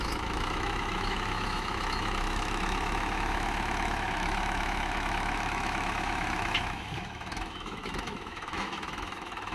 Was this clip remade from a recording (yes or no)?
yes